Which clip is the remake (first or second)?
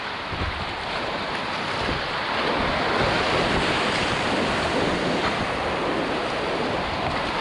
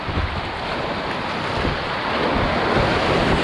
first